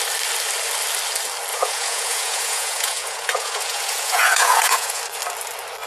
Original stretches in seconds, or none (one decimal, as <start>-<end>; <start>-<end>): 0.0-1.5; 5.0-5.9